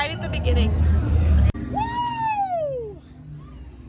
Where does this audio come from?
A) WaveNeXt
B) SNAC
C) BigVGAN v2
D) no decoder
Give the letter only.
D